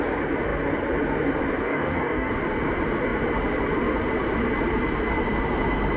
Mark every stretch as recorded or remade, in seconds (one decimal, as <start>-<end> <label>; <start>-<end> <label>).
0.0-1.6 recorded; 1.6-2.3 remade; 2.3-6.0 recorded